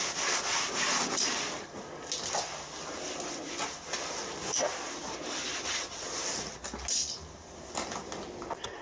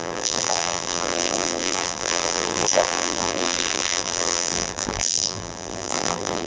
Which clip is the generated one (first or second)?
second